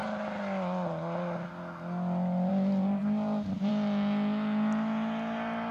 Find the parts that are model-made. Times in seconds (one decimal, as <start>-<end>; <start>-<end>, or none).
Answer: none